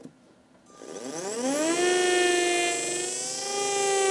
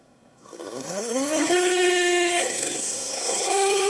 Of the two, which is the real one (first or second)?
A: first